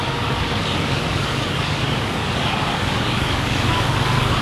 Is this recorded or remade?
remade